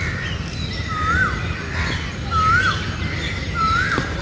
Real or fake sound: real